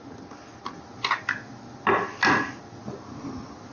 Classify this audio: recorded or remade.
recorded